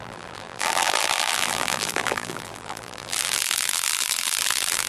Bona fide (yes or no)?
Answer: no